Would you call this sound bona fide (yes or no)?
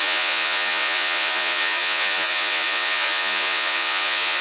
no